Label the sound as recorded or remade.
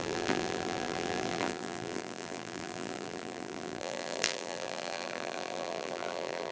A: remade